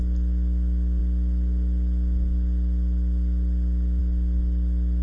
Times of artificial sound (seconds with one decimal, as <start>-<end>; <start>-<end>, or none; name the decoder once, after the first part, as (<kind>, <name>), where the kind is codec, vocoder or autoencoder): none